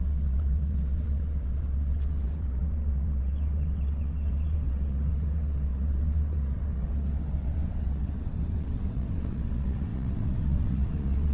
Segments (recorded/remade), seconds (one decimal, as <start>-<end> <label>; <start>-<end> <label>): 0.0-11.3 remade